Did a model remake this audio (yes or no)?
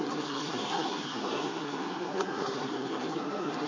yes